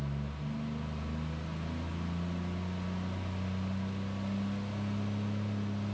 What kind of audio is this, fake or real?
real